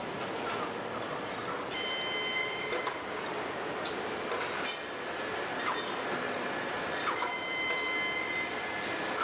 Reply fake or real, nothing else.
real